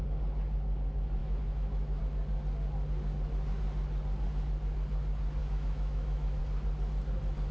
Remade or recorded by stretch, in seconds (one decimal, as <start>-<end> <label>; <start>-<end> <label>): 0.0-1.2 recorded; 1.2-2.0 remade; 2.0-5.4 recorded; 5.4-6.4 remade; 6.4-7.5 recorded